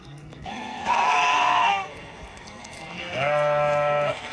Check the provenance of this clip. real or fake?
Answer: fake